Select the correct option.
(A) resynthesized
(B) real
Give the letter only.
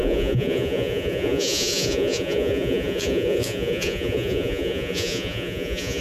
A